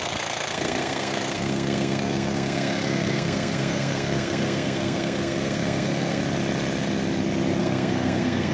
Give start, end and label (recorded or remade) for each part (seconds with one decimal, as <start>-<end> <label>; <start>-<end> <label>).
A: 0.0-6.2 remade; 6.2-7.6 recorded; 7.6-8.5 remade